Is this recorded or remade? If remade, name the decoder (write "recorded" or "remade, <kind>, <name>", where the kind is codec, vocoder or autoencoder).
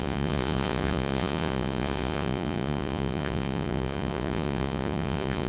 remade, vocoder, Vocos